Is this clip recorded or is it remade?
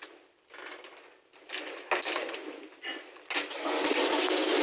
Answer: recorded